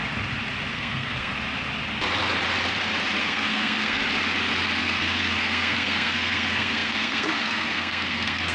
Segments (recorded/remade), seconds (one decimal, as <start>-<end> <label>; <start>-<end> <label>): 0.0-0.7 recorded; 0.7-1.3 remade; 1.3-3.2 recorded; 3.2-4.0 remade; 4.0-4.8 recorded; 4.8-8.5 remade